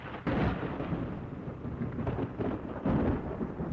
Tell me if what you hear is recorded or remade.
recorded